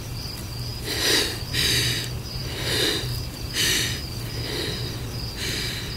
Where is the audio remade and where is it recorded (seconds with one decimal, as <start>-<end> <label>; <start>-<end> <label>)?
0.0-6.0 recorded